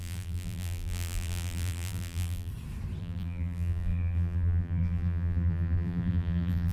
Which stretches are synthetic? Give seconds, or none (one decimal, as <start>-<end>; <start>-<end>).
0.0-2.5; 3.0-6.7